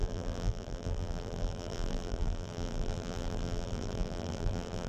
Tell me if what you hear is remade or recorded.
remade